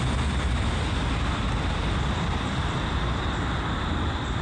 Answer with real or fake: fake